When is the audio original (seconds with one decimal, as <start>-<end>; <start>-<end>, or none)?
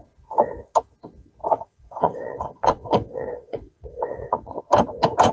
0.0-1.4; 4.6-5.3